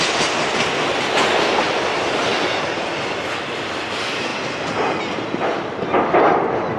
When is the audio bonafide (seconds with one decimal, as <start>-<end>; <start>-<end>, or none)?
0.0-6.8